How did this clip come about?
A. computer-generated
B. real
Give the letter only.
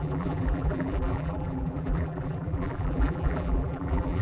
A